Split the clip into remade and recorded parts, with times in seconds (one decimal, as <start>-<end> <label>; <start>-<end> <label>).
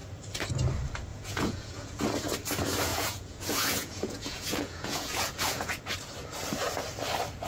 0.0-1.1 recorded; 1.1-2.0 remade; 2.0-2.9 recorded; 2.9-5.8 remade; 5.8-7.5 recorded